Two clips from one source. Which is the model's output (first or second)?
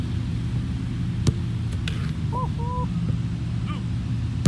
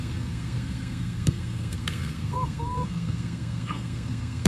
second